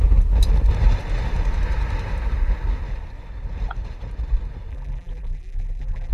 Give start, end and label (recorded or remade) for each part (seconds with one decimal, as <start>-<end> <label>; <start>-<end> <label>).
0.0-4.7 recorded; 4.7-6.1 remade

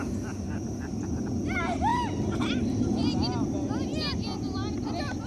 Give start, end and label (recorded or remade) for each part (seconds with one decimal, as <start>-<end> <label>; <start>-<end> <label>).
0.0-5.3 recorded

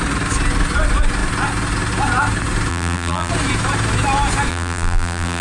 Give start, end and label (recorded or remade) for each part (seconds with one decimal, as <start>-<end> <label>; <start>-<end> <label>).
0.0-2.7 recorded; 2.7-3.3 remade; 3.3-4.5 recorded; 4.5-5.4 remade

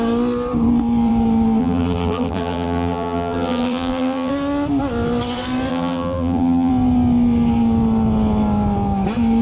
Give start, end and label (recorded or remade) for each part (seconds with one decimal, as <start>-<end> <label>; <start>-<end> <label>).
0.0-1.6 recorded; 1.6-4.3 remade; 4.3-5.7 recorded; 5.7-6.7 remade; 6.7-9.4 recorded

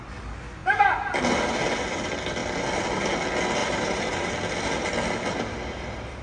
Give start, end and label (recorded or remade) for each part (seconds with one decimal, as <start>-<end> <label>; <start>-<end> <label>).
0.0-3.6 recorded; 3.6-4.3 remade; 4.3-6.2 recorded

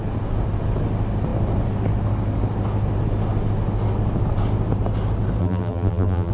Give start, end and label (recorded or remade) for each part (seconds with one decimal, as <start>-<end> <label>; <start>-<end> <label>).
0.0-5.4 recorded; 5.4-6.3 remade

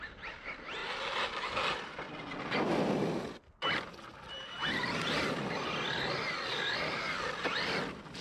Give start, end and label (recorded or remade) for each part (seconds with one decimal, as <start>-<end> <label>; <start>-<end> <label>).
0.0-8.2 recorded

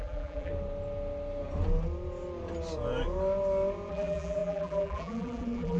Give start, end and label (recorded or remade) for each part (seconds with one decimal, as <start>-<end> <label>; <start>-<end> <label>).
0.0-0.5 remade; 0.5-3.9 recorded; 3.9-5.8 remade